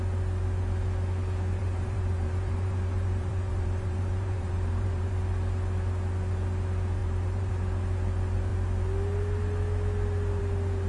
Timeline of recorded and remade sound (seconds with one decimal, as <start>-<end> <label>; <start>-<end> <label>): 0.0-1.6 recorded; 1.6-5.1 remade; 5.1-7.0 recorded; 7.0-7.5 remade; 7.5-10.9 recorded